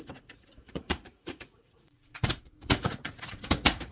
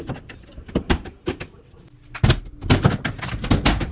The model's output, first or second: first